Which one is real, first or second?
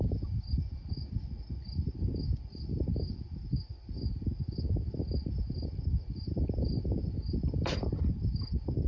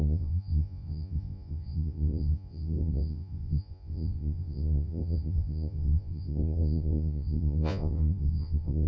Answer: first